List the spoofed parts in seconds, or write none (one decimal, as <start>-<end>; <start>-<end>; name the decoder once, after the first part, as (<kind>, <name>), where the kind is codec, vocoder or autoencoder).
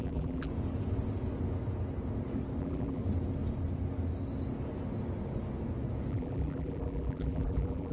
0.0-0.5 (vocoder, BigVGAN v2); 2.6-3.0; 6.1-7.9